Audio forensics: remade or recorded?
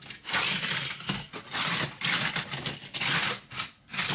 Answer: recorded